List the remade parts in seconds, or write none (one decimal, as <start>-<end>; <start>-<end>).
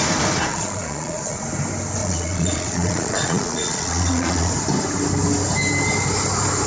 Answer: 0.5-1.4; 2.0-4.5